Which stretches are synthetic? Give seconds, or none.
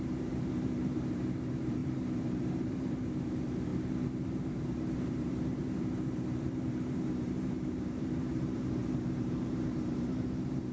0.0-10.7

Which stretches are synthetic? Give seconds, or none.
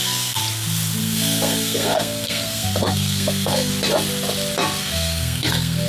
0.0-0.4; 1.0-3.7; 4.8-5.9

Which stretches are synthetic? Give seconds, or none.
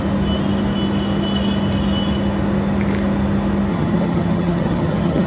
3.7-5.3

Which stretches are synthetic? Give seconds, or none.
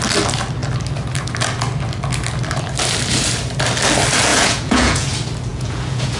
4.3-5.1; 5.5-6.2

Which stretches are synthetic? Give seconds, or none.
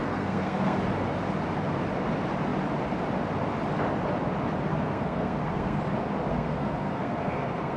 0.0-0.8; 4.7-5.8; 6.3-7.8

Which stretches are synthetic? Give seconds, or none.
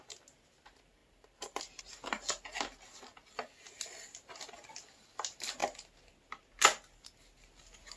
1.0-1.8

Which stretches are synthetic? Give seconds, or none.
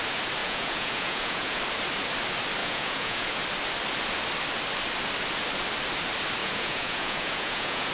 0.4-1.6; 2.6-3.4; 6.4-7.9